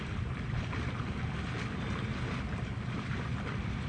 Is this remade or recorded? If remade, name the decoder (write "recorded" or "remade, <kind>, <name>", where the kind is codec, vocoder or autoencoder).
recorded